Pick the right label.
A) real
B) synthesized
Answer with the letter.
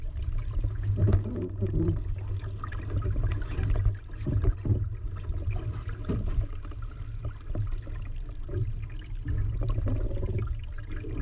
A